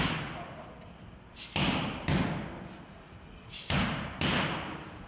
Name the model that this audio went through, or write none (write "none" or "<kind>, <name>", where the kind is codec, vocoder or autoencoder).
none